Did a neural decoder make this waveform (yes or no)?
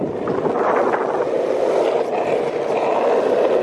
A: no